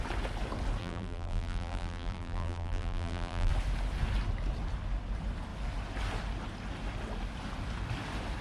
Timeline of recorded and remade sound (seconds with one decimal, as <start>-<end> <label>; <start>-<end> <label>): 0.0-0.8 recorded; 0.8-3.5 remade; 3.5-8.4 recorded